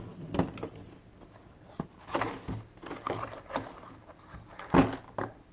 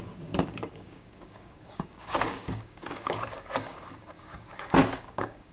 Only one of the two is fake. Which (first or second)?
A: second